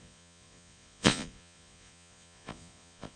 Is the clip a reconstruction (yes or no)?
yes